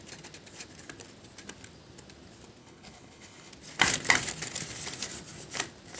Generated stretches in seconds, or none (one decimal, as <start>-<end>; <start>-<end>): 2.6-3.5